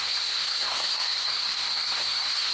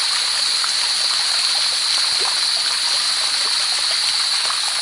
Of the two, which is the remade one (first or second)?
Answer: first